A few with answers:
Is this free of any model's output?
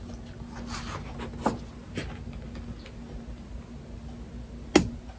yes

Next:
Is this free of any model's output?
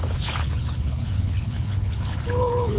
no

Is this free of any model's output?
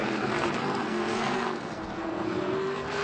no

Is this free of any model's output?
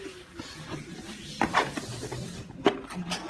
yes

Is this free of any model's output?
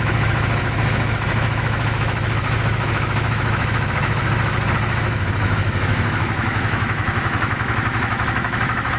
no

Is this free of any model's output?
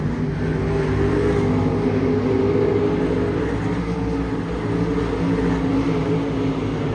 yes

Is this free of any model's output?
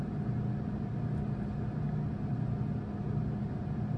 yes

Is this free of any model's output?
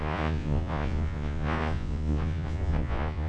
no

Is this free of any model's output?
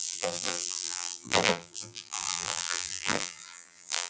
no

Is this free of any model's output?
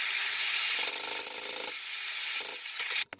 yes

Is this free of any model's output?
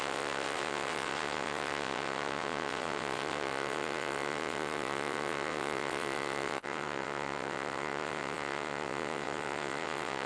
no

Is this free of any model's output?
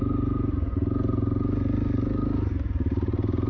yes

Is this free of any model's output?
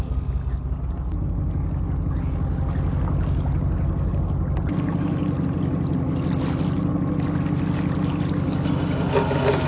yes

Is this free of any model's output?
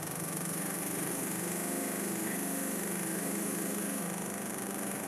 no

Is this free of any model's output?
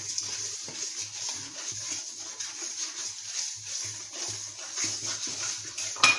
yes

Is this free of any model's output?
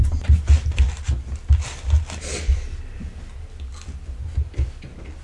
yes